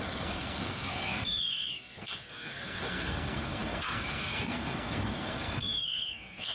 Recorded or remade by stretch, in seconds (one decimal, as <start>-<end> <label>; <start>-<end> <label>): 0.0-6.5 remade

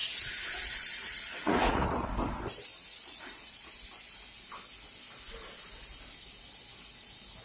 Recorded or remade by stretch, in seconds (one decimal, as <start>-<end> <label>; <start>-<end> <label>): 0.0-2.1 remade; 2.1-2.7 recorded; 2.7-3.7 remade; 3.7-7.4 recorded